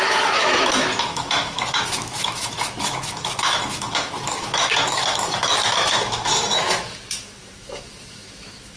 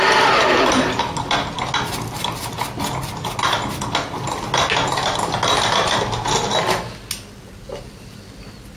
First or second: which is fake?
first